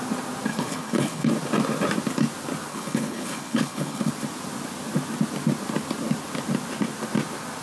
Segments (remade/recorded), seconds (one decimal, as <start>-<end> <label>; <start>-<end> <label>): 0.0-0.5 recorded; 0.5-1.3 remade; 1.3-2.7 recorded; 2.7-4.1 remade; 4.1-7.6 recorded